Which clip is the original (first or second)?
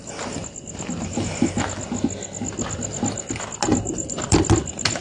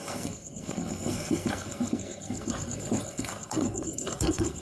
first